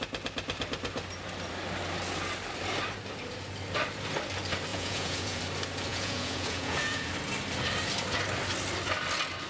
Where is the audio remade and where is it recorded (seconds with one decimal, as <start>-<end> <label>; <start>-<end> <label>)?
0.0-4.7 recorded; 4.7-5.4 remade; 5.4-5.9 recorded; 5.9-7.1 remade; 7.1-9.5 recorded

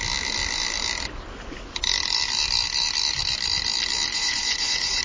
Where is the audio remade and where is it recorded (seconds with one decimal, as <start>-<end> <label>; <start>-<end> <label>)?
0.0-4.1 recorded; 4.1-5.0 remade

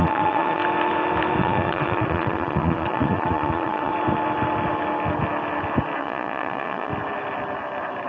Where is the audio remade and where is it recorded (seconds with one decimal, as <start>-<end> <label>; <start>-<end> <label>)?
0.0-0.6 remade; 0.6-1.4 recorded; 1.4-3.9 remade; 3.9-6.0 recorded; 6.0-6.9 remade; 6.9-8.1 recorded

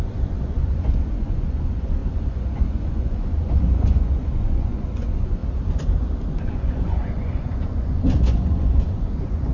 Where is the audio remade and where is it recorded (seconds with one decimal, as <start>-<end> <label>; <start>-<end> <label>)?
0.0-5.4 remade; 5.4-6.3 recorded; 6.3-9.5 remade

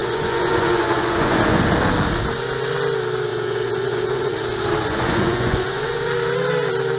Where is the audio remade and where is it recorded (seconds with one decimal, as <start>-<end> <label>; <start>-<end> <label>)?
0.0-1.6 remade; 1.6-3.3 recorded; 3.3-4.3 remade; 4.3-4.8 recorded; 4.8-6.1 remade; 6.1-7.0 recorded

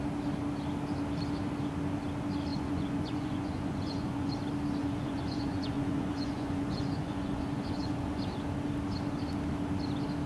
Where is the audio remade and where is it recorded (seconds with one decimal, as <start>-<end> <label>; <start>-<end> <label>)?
0.0-2.5 recorded; 2.5-4.3 remade; 4.3-4.8 recorded; 4.8-8.2 remade; 8.2-10.3 recorded